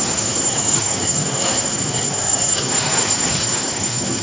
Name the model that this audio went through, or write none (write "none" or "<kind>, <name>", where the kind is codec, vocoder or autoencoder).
codec, SNAC